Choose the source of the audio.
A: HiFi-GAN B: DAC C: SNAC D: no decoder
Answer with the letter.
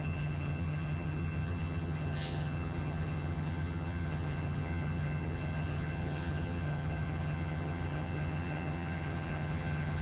A